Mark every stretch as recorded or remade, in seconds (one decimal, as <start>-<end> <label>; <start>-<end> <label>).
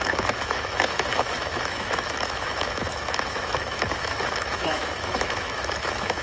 0.0-6.2 remade